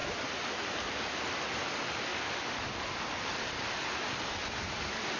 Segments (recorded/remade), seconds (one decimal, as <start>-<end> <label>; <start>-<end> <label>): 0.0-1.3 remade; 1.3-5.2 recorded